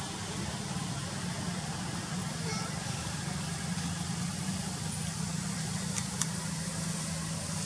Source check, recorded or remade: recorded